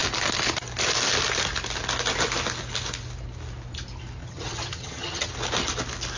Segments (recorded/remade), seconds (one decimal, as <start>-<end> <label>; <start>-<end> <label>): 0.0-4.2 recorded; 4.2-5.3 remade; 5.3-6.2 recorded